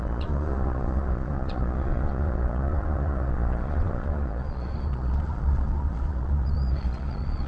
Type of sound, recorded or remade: remade